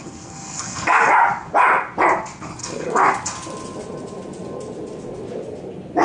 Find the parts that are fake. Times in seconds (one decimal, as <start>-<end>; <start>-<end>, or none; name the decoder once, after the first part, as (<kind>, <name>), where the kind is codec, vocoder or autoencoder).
0.0-1.0 (codec, SNAC); 2.6-3.1